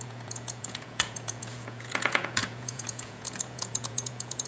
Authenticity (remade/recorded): remade